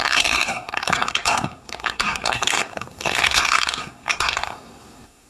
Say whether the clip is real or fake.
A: fake